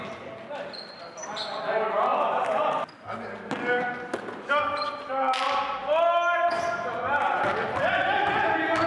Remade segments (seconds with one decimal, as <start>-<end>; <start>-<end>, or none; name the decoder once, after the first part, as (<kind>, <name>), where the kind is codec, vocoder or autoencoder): none